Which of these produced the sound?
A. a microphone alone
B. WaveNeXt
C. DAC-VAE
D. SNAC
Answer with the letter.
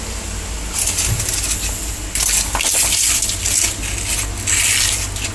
A